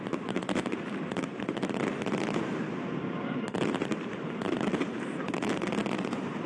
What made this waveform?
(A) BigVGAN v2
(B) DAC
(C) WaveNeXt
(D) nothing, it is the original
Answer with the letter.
A